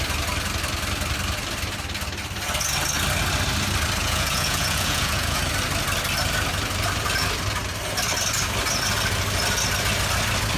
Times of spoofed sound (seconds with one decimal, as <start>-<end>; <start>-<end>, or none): 4.0-5.4